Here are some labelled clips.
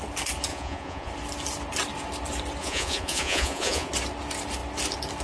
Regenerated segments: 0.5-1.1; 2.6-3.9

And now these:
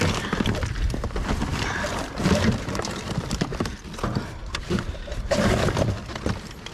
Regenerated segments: 1.5-3.8; 4.4-5.5